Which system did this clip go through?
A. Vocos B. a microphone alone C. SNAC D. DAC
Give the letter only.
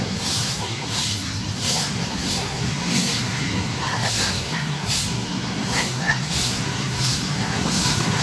C